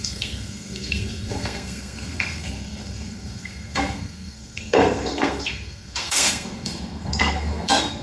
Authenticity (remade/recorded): remade